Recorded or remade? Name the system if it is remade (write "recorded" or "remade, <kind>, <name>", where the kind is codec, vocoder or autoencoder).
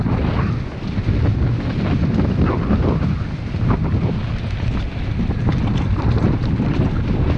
recorded